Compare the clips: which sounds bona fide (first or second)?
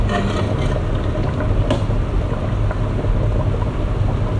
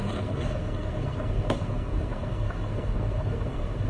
first